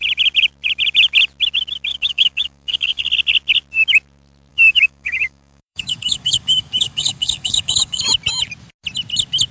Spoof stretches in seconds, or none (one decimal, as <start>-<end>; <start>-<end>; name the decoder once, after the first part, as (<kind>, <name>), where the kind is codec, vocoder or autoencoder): 1.9-3.1 (codec, DAC); 4.5-8.0